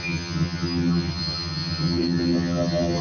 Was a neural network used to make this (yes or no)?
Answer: yes